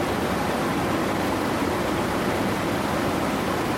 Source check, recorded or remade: recorded